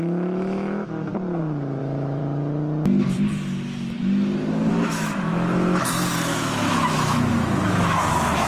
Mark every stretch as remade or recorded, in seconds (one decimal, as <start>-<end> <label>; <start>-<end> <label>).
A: 0.0-1.1 remade; 1.1-1.8 recorded; 1.8-2.2 remade; 2.2-4.7 recorded; 4.7-8.5 remade